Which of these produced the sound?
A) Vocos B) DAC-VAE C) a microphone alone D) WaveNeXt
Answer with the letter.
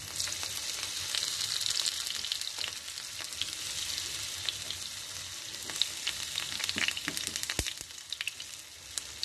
C